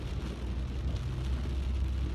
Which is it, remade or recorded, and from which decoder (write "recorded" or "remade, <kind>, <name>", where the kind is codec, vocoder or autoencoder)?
recorded